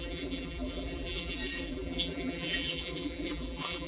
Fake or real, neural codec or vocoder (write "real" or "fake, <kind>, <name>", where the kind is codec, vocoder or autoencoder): fake, vocoder, BigVGAN v2